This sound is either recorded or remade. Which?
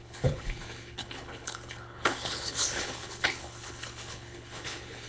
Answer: remade